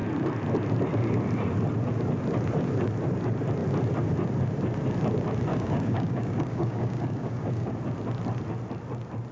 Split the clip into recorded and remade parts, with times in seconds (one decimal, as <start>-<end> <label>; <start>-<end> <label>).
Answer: 0.0-5.5 recorded; 5.5-7.7 remade; 7.7-9.3 recorded